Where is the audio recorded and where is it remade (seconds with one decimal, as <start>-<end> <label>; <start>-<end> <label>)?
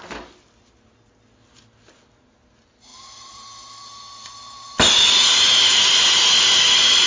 0.0-7.1 recorded